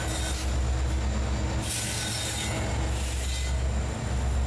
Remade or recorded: recorded